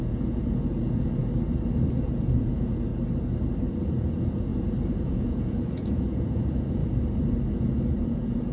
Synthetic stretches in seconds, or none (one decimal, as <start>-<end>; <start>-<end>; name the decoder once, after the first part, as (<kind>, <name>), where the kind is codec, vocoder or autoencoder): 0.0-1.2 (vocoder, Vocos); 2.0-2.9; 3.7-4.5; 5.0-6.8; 7.5-8.5

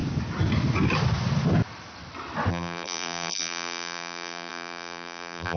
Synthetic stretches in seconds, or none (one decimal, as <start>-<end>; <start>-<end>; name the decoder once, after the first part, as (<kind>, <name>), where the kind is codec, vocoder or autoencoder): 2.5-5.6 (vocoder, BigVGAN v2)

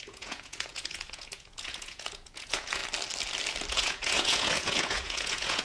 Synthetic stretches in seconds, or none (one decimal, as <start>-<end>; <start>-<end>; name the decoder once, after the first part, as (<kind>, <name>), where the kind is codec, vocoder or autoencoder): 0.0-2.8 (vocoder, Vocos); 3.7-5.6

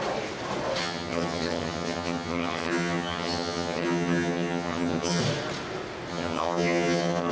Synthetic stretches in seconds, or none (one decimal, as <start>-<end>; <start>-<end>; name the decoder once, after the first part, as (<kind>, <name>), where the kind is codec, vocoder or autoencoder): 0.8-5.2 (vocoder, HiFi-GAN); 6.1-7.3

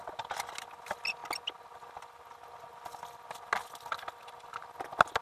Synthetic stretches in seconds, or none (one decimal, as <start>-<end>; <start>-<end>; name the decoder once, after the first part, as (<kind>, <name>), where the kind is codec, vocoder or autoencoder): none

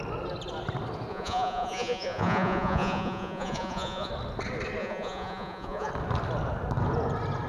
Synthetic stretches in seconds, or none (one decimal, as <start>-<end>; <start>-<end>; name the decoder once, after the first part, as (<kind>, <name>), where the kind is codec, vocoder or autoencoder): 1.1-4.1 (vocoder, Vocos); 4.8-5.9